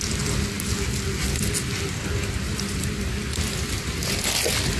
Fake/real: real